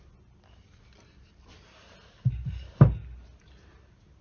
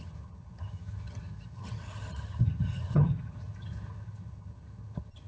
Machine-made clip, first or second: second